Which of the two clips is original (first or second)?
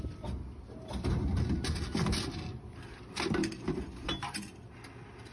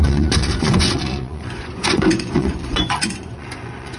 first